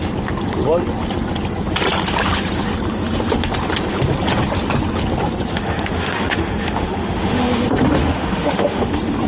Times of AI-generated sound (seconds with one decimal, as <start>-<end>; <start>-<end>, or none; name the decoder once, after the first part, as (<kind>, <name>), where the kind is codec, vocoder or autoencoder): 5.5-7.5 (autoencoder, DAC-VAE); 8.0-8.9